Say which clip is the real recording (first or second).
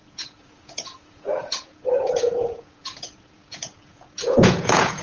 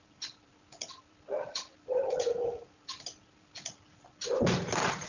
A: second